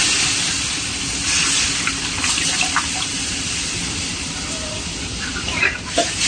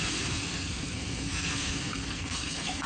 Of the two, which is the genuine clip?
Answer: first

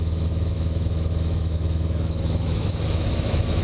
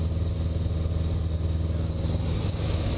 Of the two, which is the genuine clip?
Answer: second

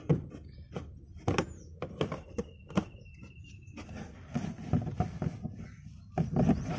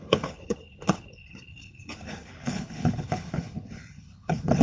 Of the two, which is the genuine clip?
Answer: first